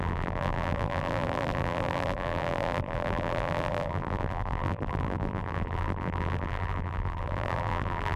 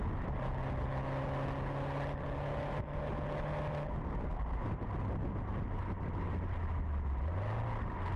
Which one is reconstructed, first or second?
first